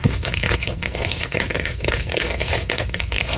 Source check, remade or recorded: remade